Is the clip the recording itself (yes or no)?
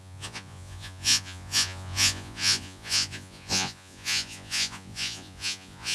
no